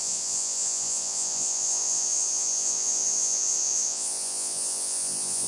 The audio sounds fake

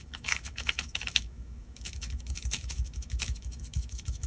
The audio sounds fake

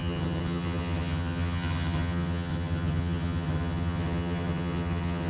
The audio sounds fake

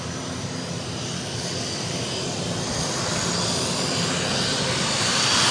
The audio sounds real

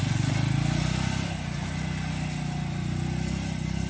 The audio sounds real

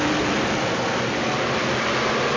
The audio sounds real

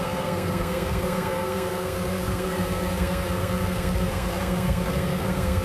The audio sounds fake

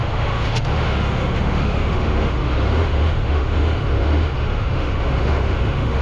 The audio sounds fake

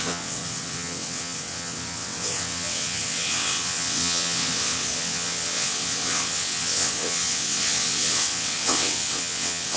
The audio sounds fake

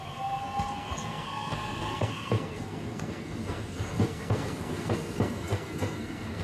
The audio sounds fake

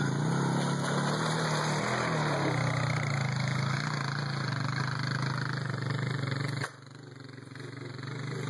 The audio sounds real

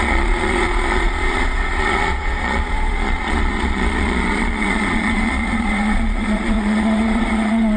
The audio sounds fake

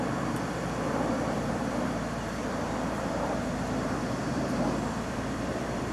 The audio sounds fake